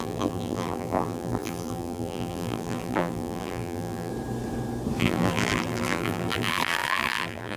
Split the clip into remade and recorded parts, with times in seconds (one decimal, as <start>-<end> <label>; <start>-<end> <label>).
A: 0.0-4.1 remade; 4.1-5.0 recorded; 5.0-7.6 remade